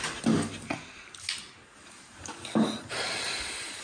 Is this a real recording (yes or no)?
yes